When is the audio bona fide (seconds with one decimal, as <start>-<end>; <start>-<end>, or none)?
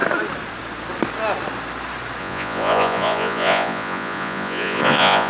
0.0-2.2